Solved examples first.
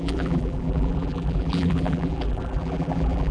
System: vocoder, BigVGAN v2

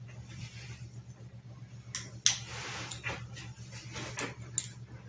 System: none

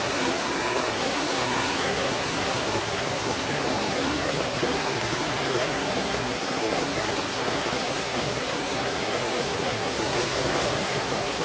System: codec, SNAC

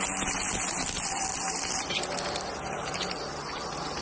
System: none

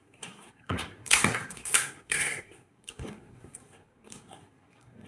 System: codec, SNAC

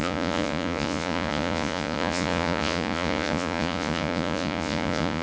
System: vocoder, Vocos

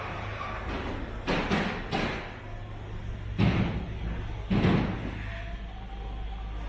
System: none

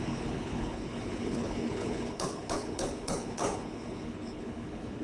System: codec, HILCodec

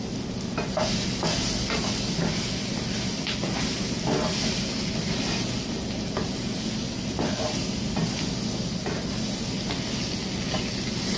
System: none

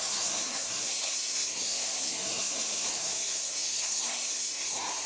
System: codec, SNAC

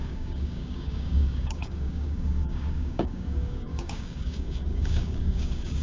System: codec, DAC